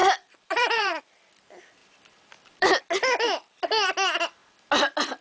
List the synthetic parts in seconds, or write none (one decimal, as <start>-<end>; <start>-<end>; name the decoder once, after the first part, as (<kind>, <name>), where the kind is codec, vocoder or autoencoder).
0.0-1.0 (vocoder, BigVGAN v2); 1.8-2.8